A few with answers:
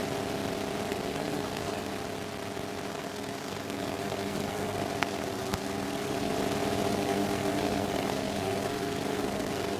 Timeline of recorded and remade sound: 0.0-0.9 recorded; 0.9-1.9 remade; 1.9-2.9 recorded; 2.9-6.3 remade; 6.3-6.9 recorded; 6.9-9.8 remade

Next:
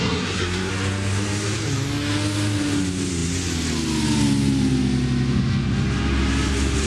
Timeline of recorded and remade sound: 0.0-0.7 remade; 0.7-6.9 recorded

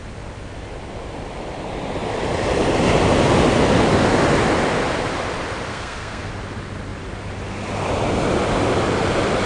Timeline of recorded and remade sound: 0.0-5.7 recorded; 5.7-6.3 remade; 6.3-9.5 recorded

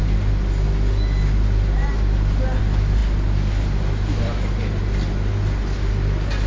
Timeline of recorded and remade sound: 0.0-6.5 recorded

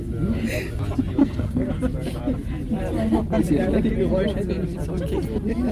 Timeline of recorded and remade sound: 0.0-1.2 recorded; 1.2-1.7 remade; 1.7-5.7 recorded

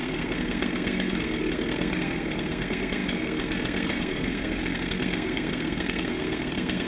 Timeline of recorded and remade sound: 0.0-6.9 remade